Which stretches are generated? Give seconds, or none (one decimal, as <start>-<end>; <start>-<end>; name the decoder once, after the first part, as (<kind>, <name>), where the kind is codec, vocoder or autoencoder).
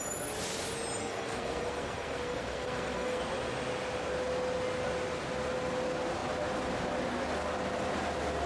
1.0-3.2 (codec, SNAC)